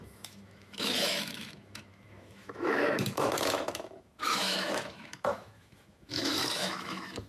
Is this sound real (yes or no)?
no